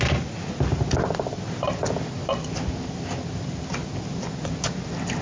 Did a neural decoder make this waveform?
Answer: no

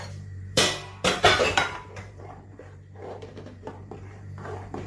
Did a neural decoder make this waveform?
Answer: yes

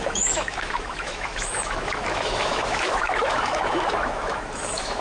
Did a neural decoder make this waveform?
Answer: yes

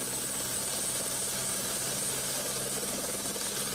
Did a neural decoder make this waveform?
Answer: no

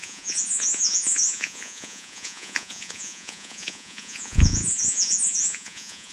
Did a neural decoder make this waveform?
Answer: yes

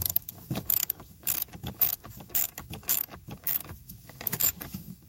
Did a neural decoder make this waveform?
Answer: yes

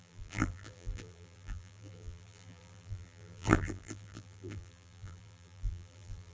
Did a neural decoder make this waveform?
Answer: yes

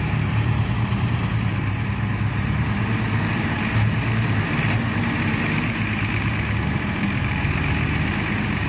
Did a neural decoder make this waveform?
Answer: yes